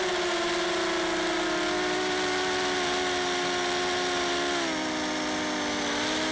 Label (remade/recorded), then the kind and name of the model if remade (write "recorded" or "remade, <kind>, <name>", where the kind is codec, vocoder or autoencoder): recorded